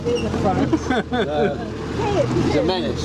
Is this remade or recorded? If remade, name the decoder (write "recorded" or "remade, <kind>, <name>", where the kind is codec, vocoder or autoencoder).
recorded